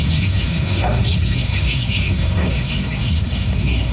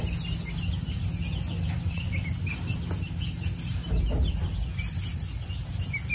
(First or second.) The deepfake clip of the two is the first